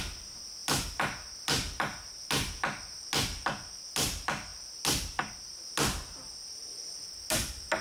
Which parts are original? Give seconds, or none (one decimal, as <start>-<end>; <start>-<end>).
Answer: 0.0-7.8